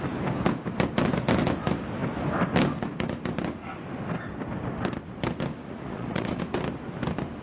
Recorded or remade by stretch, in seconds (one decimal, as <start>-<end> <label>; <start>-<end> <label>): 0.0-5.6 recorded; 5.6-6.4 remade; 6.4-7.4 recorded